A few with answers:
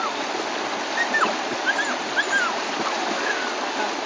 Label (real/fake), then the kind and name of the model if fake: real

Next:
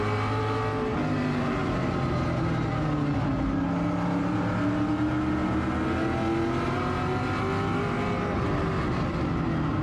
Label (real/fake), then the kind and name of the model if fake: real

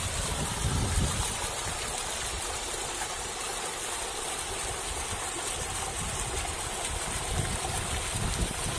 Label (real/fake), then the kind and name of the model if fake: real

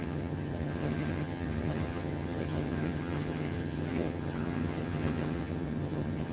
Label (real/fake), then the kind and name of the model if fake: fake, vocoder, HiFi-GAN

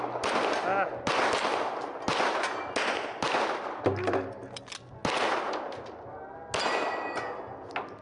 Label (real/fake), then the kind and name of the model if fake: real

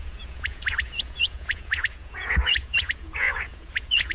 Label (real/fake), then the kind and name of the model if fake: fake, vocoder, Vocos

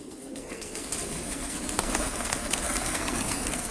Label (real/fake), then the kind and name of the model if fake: fake, codec, SNAC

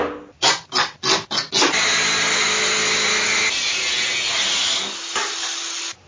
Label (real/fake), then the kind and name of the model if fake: real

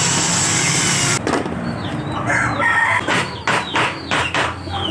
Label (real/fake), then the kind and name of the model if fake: real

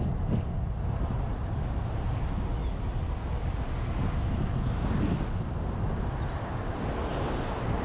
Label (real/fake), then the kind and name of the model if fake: real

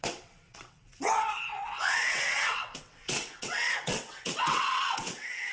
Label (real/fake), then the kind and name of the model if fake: fake, vocoder, WaveNeXt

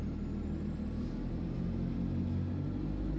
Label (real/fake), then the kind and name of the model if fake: real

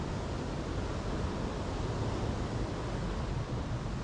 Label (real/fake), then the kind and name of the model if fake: real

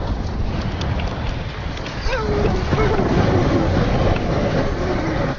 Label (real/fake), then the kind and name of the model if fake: real